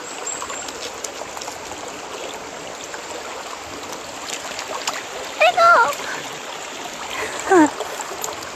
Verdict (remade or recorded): recorded